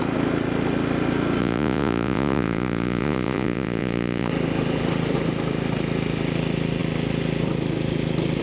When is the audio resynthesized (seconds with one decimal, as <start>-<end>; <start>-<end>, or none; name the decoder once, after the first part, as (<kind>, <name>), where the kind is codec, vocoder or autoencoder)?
1.4-4.3 (vocoder, Vocos)